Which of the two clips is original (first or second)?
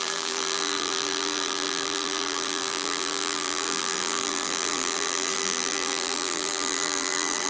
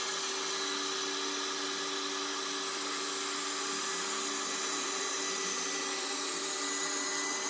second